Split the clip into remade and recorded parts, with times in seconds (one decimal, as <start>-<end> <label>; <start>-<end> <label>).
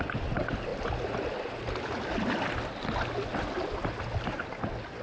0.0-5.0 recorded